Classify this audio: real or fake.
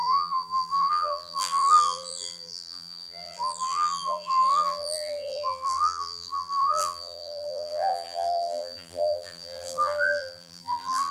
fake